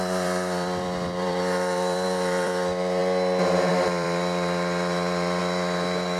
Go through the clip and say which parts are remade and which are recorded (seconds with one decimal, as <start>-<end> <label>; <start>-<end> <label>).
0.0-3.0 remade; 3.0-3.7 recorded; 3.7-6.2 remade